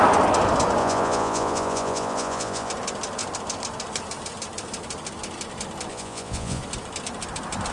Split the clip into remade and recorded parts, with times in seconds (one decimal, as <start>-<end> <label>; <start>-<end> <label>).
0.0-0.8 recorded; 0.8-2.7 remade; 2.7-5.9 recorded; 5.9-6.6 remade; 6.6-7.7 recorded